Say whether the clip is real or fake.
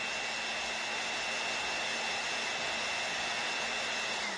real